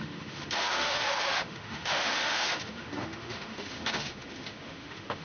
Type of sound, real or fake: fake